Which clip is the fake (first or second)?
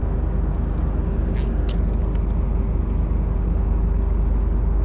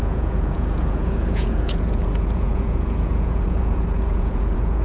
second